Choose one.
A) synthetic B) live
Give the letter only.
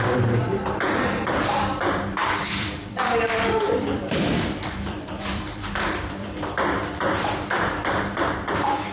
A